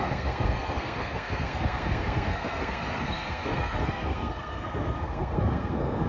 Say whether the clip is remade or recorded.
remade